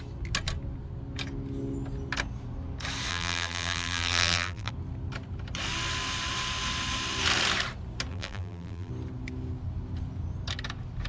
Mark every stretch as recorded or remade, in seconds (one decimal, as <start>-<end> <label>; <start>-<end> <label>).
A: 0.0-3.1 recorded; 3.1-4.7 remade; 4.7-8.1 recorded; 8.1-8.9 remade; 8.9-11.1 recorded